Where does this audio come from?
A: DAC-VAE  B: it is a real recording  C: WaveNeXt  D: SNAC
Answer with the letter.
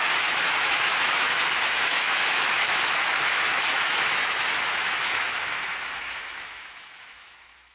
A